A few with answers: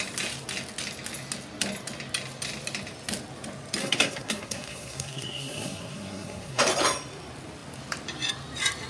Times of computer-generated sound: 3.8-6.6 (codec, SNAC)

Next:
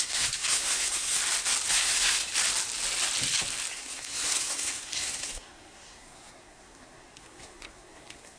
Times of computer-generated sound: 0.0-1.2 (codec, SNAC); 1.7-2.3; 3.7-8.4

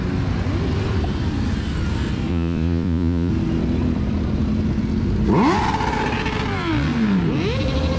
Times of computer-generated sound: 2.3-3.3 (vocoder, Vocos)

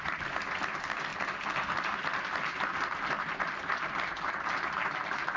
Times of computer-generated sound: none

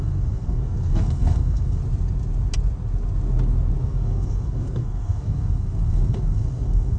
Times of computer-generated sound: 0.0-1.8 (codec, SNAC); 3.8-7.0

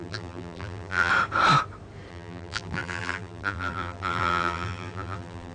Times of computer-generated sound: 0.0-1.1 (vocoder, BigVGAN v2); 2.1-5.5